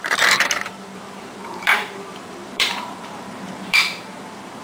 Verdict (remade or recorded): remade